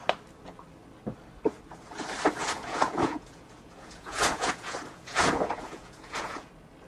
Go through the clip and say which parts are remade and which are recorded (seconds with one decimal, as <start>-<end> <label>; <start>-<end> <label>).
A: 0.0-2.4 recorded; 2.4-6.5 remade; 6.5-6.9 recorded